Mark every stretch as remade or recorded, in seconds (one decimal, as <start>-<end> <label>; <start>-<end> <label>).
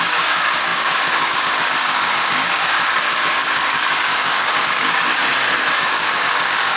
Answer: 0.0-5.2 remade; 5.2-5.8 recorded; 5.8-6.8 remade